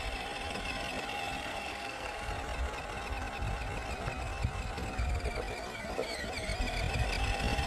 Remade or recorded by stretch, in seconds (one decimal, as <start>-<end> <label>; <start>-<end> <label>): 0.0-1.5 recorded; 1.5-2.3 remade; 2.3-7.7 recorded

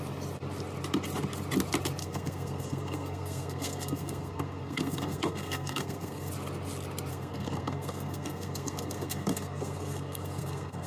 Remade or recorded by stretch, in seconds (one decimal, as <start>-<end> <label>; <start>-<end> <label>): 0.0-2.0 recorded; 2.0-6.3 remade; 6.3-7.1 recorded; 7.1-10.9 remade

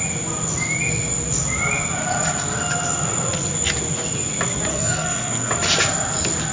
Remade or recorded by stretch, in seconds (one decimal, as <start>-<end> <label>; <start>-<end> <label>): 0.0-4.7 recorded; 4.7-5.5 remade; 5.5-6.5 recorded

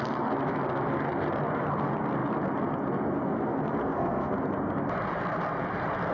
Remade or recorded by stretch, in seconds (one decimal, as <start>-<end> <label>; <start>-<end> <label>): 0.0-3.8 recorded; 3.8-4.3 remade; 4.3-6.1 recorded

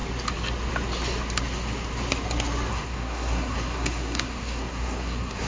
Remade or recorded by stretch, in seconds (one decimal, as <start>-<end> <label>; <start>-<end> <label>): 0.0-2.7 recorded; 2.7-5.5 remade